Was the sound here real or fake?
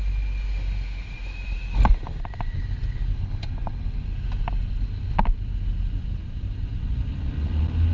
real